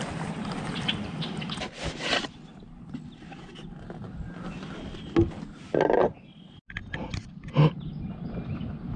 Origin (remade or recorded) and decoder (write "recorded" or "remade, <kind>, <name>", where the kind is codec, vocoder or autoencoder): recorded